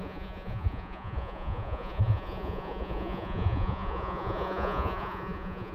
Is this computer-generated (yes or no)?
yes